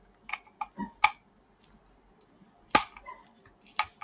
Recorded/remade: recorded